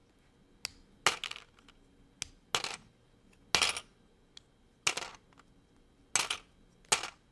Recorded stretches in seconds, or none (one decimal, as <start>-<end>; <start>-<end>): 0.0-7.3